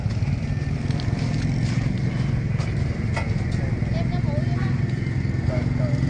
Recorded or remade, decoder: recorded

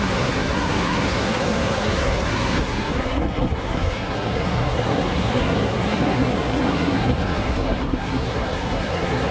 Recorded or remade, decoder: remade, codec, SNAC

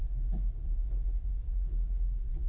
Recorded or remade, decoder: recorded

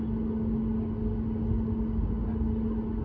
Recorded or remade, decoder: recorded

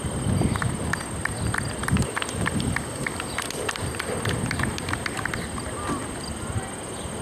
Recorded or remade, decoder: recorded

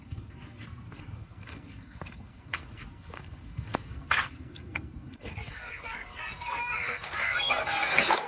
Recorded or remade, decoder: remade, codec, SNAC